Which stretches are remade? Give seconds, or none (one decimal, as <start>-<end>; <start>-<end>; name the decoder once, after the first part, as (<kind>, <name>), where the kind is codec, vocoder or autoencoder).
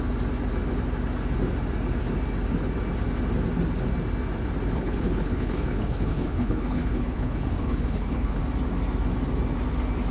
4.7-8.4 (codec, HILCodec)